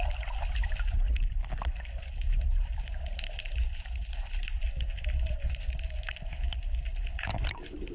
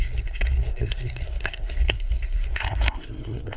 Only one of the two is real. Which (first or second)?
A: first